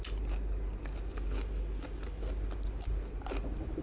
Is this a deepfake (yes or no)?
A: no